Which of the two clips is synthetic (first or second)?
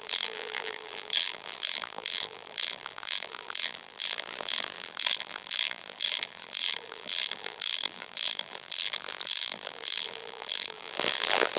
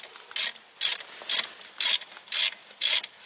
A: first